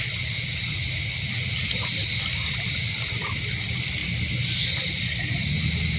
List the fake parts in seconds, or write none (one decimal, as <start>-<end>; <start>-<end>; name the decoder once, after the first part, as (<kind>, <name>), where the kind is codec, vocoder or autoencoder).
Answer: none